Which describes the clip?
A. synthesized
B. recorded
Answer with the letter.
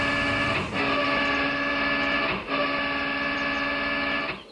B